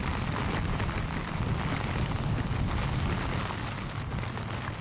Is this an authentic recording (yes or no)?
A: yes